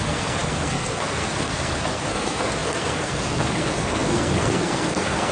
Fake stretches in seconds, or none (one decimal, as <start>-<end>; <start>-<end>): 0.0-5.3